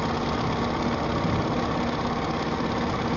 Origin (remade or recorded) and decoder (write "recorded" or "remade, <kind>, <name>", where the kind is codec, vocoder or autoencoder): recorded